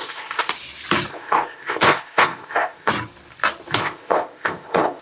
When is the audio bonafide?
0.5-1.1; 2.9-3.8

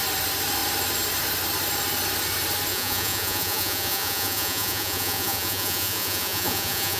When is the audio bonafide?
0.0-2.7